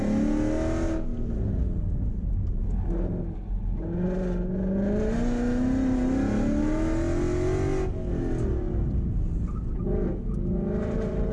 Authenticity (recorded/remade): recorded